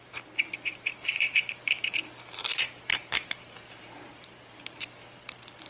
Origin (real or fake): fake